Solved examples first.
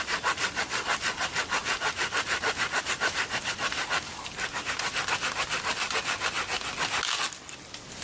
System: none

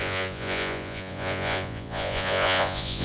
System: vocoder, Vocos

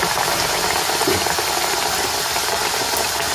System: none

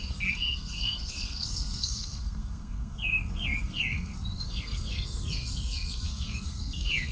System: codec, SNAC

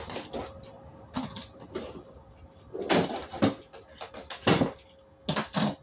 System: none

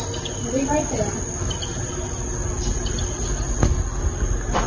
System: none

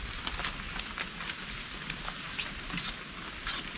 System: none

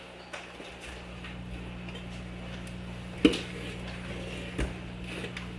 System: none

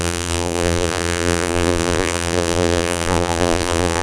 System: vocoder, BigVGAN v2